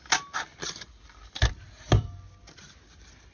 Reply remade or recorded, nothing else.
recorded